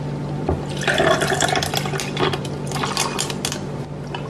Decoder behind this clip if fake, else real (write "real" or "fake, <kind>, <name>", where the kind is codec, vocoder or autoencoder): real